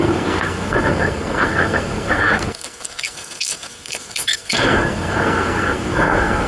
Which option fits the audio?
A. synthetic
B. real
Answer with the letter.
A